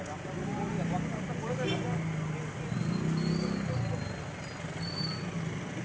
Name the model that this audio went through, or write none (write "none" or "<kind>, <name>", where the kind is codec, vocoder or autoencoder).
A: none